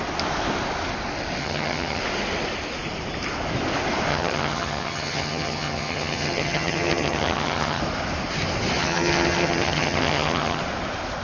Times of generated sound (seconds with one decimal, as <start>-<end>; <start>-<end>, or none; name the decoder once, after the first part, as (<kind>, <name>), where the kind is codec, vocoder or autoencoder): 1.4-2.0 (vocoder, HiFi-GAN); 4.1-7.8; 8.8-10.6